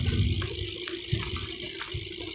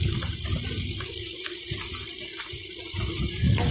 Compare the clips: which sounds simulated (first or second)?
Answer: second